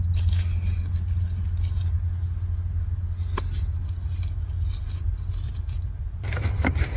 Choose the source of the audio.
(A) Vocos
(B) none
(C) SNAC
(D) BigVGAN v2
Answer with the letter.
B